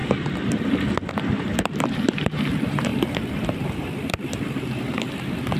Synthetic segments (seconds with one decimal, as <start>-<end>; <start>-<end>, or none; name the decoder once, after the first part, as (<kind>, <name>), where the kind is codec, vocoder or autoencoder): 1.1-5.6 (vocoder, BigVGAN v2)